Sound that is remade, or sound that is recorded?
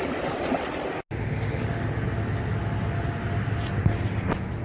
recorded